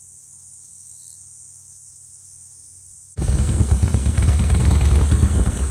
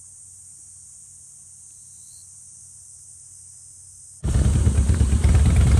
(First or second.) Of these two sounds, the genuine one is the second